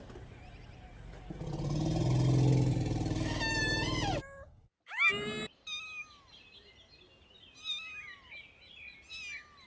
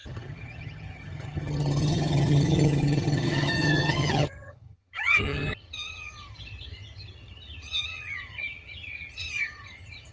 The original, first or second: first